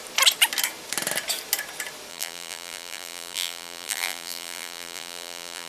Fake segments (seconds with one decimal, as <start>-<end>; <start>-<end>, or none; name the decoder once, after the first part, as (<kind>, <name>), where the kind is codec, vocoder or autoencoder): 2.1-5.7 (vocoder, BigVGAN v2)